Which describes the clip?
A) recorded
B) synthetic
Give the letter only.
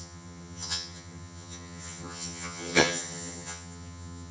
B